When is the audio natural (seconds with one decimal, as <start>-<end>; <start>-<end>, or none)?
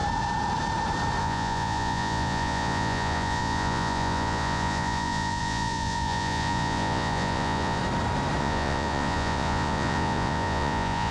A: 0.0-1.2; 7.8-8.4